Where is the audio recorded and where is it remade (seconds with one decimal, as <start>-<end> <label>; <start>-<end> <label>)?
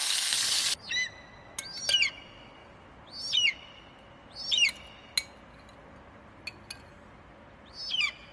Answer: 0.0-0.6 remade; 0.6-8.3 recorded